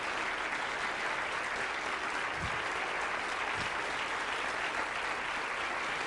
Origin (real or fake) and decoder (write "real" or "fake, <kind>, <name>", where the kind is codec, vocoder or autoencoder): real